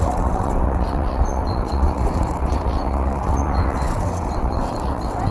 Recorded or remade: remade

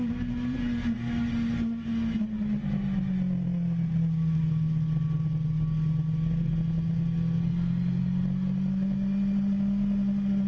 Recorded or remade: recorded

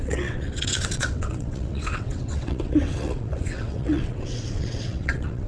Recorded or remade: remade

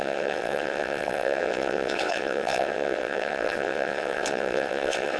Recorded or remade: remade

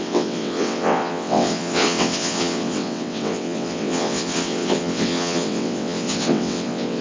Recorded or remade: remade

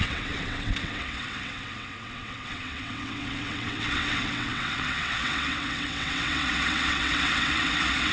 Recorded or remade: remade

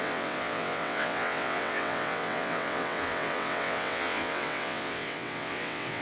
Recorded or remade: remade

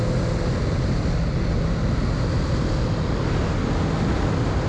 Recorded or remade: recorded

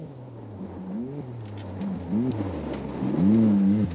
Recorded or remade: recorded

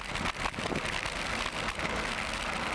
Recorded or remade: recorded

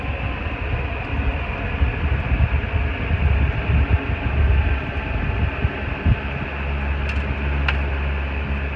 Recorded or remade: recorded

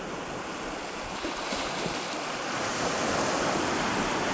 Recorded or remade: recorded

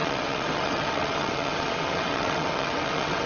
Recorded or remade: remade